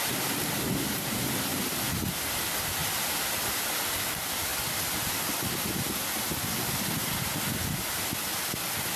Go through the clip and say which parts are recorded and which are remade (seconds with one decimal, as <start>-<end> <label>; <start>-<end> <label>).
0.0-9.0 recorded